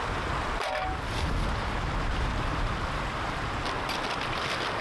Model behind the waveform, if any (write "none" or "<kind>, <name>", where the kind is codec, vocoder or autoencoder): none